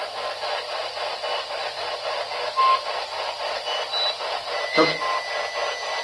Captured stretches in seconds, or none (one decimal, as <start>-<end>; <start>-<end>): 0.0-6.0